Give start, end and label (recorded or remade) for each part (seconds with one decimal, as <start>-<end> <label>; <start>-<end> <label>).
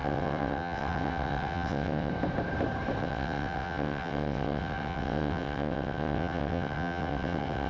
0.0-2.1 remade; 2.1-3.0 recorded; 3.0-7.7 remade